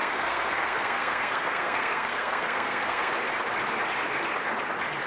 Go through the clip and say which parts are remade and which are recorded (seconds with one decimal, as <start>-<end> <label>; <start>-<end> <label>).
0.0-3.1 remade; 3.1-5.1 recorded